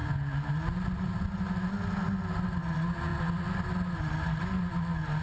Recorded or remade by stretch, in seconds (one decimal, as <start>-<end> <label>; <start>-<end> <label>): 0.0-5.2 recorded